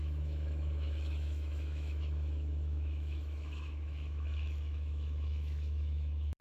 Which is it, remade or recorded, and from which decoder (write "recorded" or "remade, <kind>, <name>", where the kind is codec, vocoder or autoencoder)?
remade, autoencoder, DAC-VAE